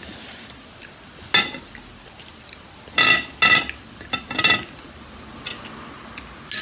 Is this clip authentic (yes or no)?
yes